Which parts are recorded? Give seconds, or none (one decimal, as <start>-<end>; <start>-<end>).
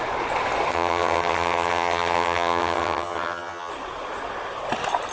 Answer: 0.0-0.7; 3.7-5.1